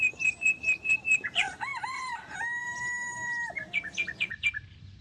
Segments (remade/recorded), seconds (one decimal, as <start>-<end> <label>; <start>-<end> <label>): 0.0-5.0 remade